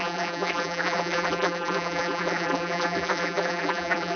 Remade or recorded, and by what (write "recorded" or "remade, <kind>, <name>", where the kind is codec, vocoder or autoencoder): remade, vocoder, BigVGAN v2